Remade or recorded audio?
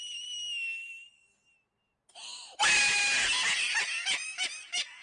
recorded